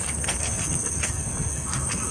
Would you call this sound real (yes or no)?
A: no